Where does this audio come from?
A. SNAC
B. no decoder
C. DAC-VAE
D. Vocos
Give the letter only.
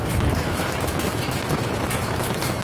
C